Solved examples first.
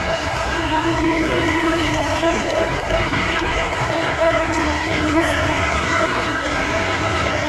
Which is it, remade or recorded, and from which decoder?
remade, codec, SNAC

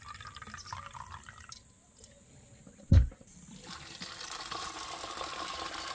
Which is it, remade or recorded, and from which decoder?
recorded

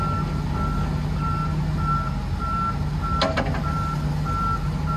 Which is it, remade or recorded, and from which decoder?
recorded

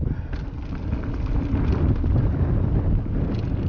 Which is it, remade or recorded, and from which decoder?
recorded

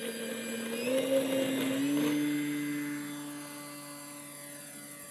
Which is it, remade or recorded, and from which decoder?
recorded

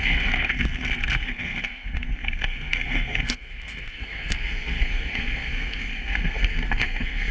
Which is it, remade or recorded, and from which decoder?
remade, codec, SNAC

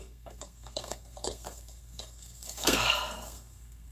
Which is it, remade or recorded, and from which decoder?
remade, codec, SNAC